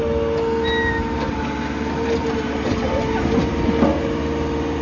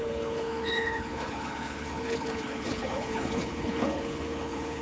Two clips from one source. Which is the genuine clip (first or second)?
first